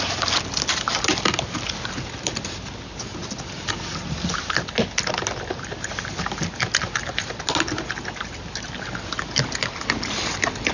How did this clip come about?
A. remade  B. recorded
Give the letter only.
B